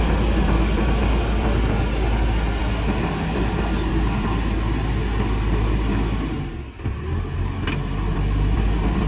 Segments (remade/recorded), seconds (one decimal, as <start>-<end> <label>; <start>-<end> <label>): 0.0-9.1 recorded